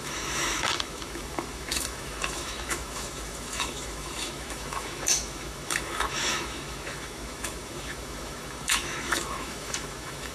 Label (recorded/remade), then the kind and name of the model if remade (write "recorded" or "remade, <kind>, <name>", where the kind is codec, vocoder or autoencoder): remade, autoencoder, DAC-VAE